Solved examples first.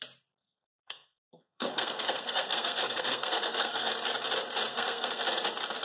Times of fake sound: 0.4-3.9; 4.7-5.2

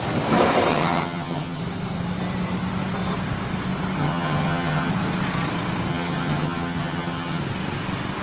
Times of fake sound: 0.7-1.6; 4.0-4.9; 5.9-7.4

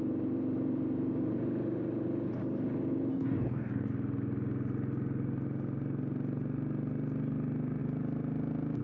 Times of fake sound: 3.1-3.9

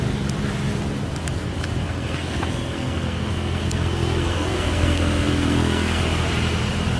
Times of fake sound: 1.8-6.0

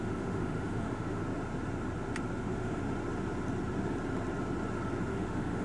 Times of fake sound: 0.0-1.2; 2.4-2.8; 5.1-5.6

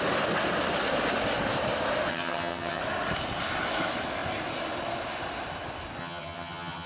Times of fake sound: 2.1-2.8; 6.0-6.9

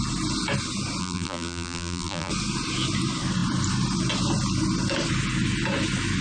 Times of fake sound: 1.0-2.3